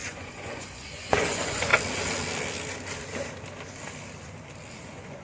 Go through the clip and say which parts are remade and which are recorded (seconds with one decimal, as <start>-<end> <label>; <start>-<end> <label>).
0.0-1.7 remade; 1.7-4.8 recorded; 4.8-5.2 remade